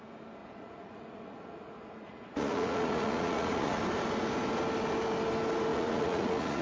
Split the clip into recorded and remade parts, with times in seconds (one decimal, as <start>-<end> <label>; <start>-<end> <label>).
0.0-0.4 recorded; 0.4-3.8 remade; 3.8-5.7 recorded; 5.7-6.6 remade